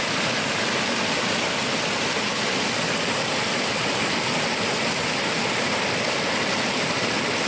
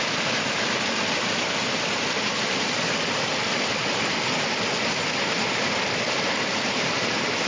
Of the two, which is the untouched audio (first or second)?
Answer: first